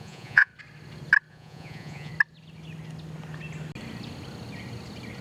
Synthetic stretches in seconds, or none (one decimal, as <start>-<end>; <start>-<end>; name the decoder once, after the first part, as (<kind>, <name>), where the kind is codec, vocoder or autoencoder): 0.0-0.5 (vocoder, Vocos); 1.3-2.1